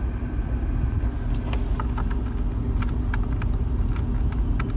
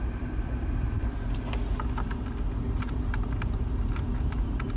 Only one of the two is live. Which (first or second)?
first